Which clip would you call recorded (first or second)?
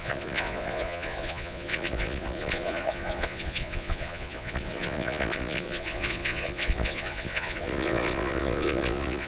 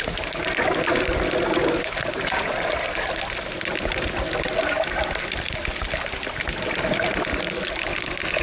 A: second